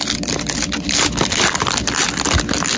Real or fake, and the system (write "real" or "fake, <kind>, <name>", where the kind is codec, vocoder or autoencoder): real